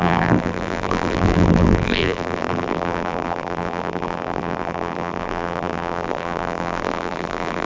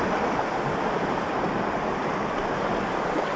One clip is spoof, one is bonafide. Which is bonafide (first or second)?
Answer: second